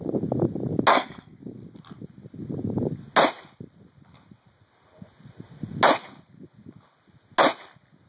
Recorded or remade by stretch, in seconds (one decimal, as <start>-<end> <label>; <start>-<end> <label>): 0.0-0.9 recorded; 0.9-1.4 remade; 1.4-8.1 recorded